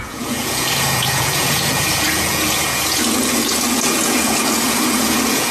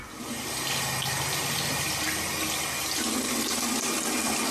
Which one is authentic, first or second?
second